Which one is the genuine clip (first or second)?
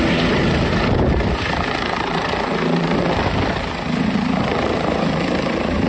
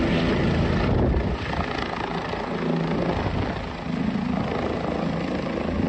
second